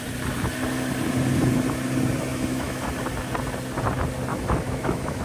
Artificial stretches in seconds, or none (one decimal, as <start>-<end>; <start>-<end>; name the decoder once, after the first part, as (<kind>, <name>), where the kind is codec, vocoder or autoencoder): 2.3-2.9 (autoencoder, DAC-VAE); 4.3-5.2